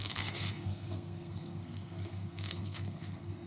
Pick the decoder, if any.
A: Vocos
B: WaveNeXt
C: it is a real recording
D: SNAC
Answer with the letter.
D